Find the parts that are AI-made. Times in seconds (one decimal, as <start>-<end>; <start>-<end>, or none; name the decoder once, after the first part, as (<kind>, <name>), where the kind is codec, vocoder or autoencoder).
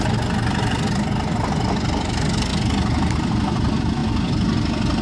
none